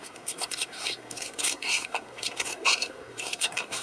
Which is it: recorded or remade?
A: remade